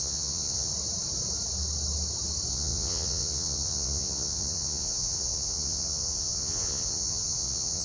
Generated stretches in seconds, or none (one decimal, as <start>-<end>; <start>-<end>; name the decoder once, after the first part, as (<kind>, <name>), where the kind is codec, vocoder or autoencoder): 0.0-0.7 (vocoder, Vocos); 2.5-7.8